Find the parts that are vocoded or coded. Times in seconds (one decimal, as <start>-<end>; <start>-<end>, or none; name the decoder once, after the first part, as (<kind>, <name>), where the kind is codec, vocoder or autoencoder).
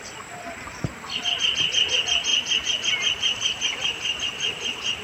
none